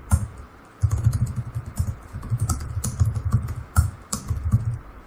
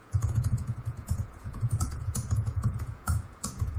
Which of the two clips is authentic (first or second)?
first